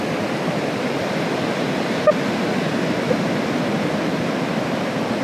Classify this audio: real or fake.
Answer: real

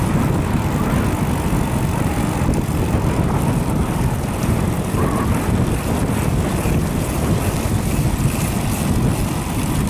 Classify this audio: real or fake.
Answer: real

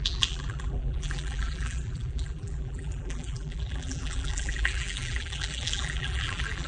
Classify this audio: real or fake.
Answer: fake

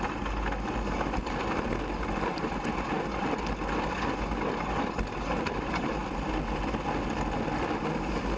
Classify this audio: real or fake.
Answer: real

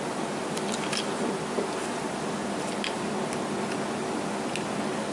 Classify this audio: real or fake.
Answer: real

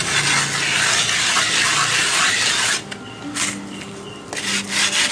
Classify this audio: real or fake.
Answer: real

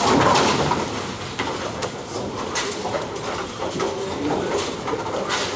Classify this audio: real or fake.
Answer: fake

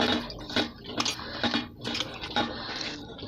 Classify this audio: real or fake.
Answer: real